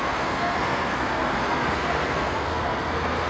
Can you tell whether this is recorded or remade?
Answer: remade